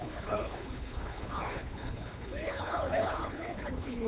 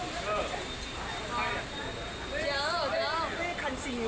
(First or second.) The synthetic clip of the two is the first